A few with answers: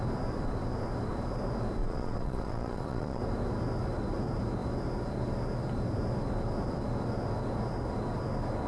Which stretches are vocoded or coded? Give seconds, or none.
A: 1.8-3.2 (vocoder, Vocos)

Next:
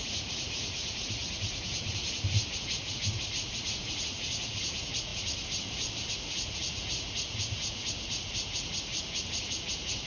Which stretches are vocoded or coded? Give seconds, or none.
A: 0.0-5.1 (vocoder, Vocos); 6.1-10.1

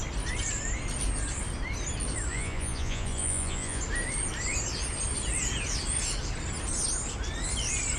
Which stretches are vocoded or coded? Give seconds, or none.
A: 2.3-3.8 (vocoder, Vocos)